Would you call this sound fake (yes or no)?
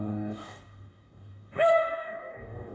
yes